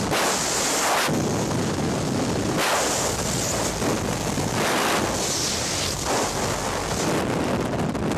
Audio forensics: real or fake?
real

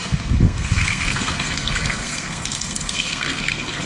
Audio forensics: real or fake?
fake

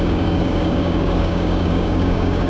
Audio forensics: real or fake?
fake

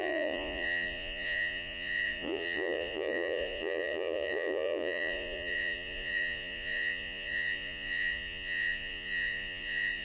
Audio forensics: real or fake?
fake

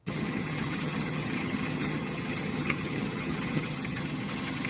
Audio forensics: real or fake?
fake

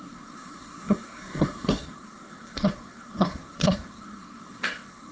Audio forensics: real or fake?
fake